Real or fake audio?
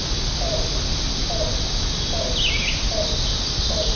real